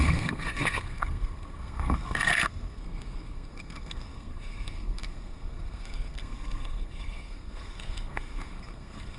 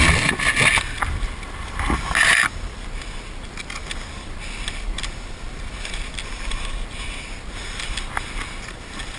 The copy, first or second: first